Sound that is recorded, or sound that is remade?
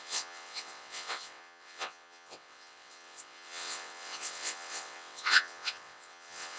remade